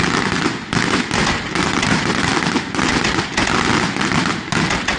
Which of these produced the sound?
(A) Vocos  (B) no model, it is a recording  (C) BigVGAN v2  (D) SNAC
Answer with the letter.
B